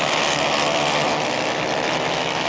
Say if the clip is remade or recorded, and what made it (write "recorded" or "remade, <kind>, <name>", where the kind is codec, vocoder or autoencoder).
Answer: recorded